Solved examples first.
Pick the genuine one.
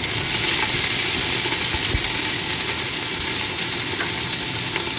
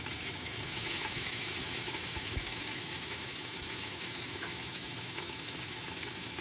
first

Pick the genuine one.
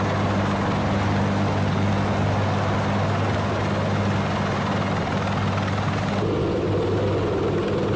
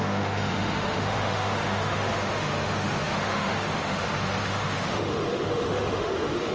first